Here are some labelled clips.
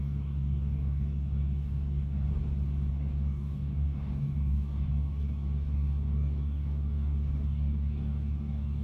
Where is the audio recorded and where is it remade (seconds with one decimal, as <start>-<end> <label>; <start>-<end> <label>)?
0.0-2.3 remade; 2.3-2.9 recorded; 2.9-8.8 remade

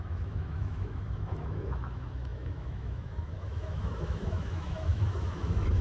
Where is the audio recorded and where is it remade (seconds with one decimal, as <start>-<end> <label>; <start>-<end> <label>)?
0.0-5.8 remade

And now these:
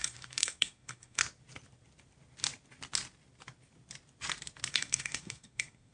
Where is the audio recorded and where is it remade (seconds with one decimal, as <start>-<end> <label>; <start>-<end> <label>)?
0.0-1.2 remade; 1.2-4.7 recorded; 4.7-5.9 remade

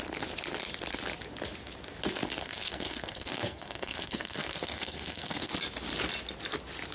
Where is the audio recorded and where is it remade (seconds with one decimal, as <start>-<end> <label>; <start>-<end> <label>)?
0.0-2.4 recorded; 2.4-5.5 remade; 5.5-6.9 recorded

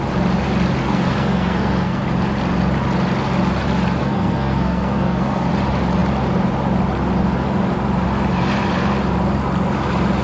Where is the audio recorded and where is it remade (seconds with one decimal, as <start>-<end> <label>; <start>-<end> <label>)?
0.0-0.8 recorded; 0.8-2.0 remade; 2.0-4.0 recorded; 4.0-5.5 remade; 5.5-10.2 recorded